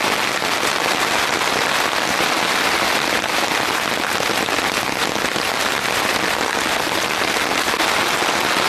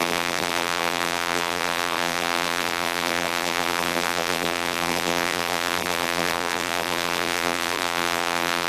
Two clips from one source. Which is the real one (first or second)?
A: first